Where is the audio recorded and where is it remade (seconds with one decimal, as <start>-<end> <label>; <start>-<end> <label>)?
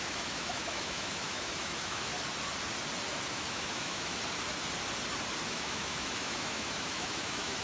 0.0-2.1 remade; 2.1-3.3 recorded; 3.3-4.1 remade; 4.1-5.5 recorded; 5.5-7.6 remade